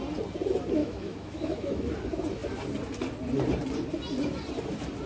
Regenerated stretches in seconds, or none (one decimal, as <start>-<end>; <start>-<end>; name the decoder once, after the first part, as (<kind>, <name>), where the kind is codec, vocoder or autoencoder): 0.8-1.9 (autoencoder, DAC-VAE)